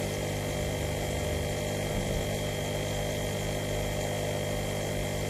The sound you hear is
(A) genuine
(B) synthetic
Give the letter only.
A